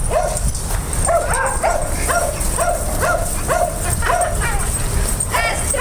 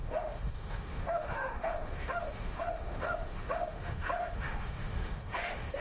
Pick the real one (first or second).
first